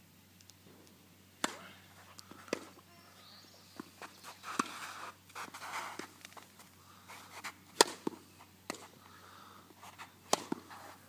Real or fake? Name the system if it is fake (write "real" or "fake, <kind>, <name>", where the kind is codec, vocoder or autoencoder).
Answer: real